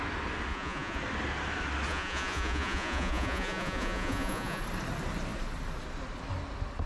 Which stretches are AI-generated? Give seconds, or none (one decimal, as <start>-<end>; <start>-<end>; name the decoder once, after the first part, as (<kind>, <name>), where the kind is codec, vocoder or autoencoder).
0.5-1.0 (vocoder, Vocos); 1.9-4.6